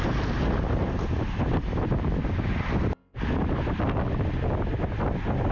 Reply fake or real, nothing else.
real